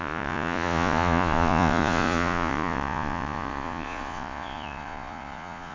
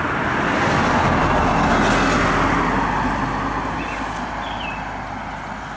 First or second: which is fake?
first